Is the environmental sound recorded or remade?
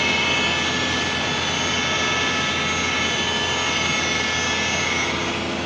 recorded